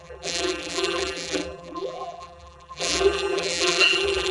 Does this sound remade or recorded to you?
remade